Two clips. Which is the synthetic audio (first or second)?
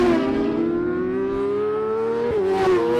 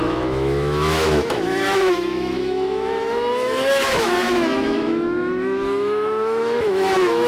second